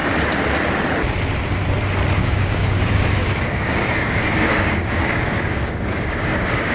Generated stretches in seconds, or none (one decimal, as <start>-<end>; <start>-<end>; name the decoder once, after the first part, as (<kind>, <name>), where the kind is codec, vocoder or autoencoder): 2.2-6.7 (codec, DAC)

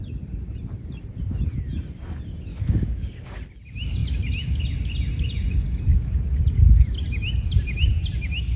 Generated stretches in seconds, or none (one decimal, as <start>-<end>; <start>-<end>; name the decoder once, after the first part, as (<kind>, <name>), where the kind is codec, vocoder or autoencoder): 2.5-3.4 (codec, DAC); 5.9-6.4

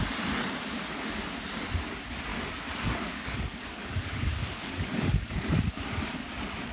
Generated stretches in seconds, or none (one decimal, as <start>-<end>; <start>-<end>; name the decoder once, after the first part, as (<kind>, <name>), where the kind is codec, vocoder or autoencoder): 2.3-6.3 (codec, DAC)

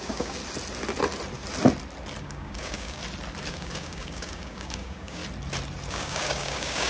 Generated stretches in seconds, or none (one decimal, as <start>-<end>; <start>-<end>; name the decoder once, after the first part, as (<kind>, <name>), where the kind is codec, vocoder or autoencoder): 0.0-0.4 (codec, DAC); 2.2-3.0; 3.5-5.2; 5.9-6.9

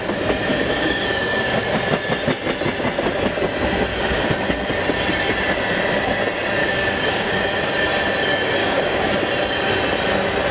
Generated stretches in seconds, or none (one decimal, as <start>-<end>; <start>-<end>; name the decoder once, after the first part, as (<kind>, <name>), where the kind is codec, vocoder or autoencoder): 0.5-1.6 (codec, DAC); 6.6-7.3; 8.6-9.1

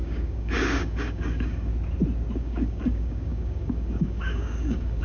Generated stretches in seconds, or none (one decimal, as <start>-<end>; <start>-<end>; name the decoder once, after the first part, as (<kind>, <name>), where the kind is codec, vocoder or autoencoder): 0.0-1.7 (codec, DAC); 2.4-5.0